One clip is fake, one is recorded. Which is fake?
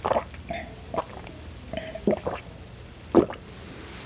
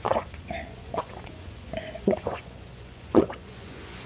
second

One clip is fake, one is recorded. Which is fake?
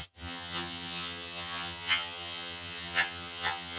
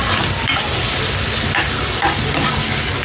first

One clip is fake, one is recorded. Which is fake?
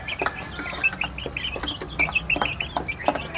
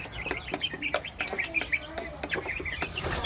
second